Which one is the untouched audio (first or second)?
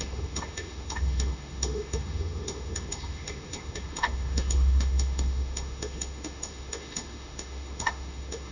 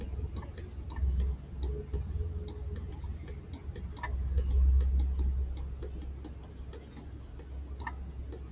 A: second